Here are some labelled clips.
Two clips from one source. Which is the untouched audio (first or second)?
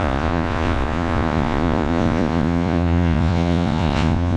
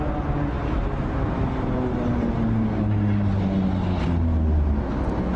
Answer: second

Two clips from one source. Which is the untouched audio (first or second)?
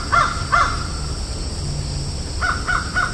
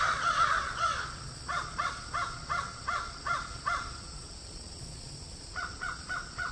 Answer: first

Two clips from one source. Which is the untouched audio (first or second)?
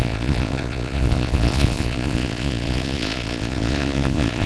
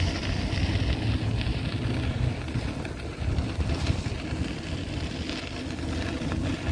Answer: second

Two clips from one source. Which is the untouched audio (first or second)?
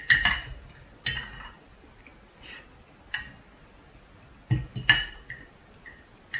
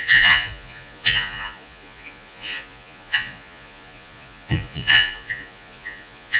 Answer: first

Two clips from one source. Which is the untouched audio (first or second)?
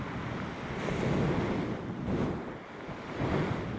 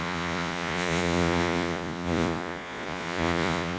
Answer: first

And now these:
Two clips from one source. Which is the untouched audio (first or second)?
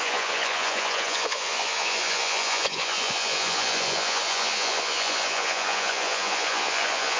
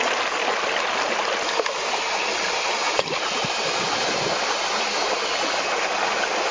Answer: second